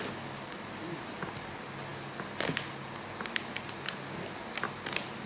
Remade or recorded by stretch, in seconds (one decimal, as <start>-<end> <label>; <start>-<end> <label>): 0.0-5.3 recorded